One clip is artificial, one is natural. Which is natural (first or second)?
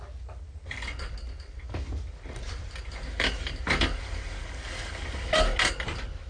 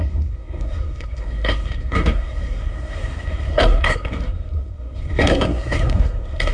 first